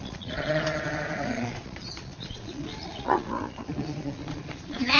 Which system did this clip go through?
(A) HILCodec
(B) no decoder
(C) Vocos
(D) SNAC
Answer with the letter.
C